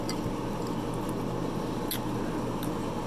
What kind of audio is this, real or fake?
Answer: real